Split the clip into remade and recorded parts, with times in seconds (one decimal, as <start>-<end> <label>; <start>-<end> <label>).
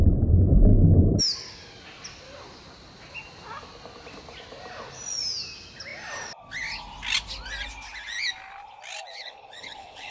0.0-9.2 recorded; 9.2-10.1 remade